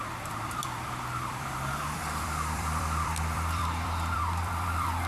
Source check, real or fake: fake